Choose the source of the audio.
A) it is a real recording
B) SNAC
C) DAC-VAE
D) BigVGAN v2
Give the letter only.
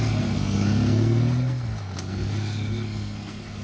B